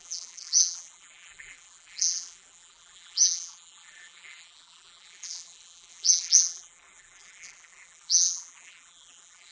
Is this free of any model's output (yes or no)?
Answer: no